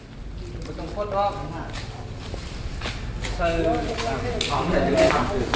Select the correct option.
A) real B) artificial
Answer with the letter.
A